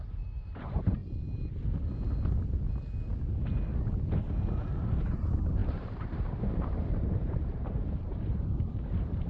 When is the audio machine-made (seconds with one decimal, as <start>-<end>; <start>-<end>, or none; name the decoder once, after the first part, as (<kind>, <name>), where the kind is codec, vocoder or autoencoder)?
0.0-1.0 (vocoder, BigVGAN v2); 5.1-9.3